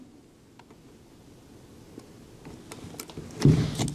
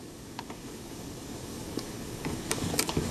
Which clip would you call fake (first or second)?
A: second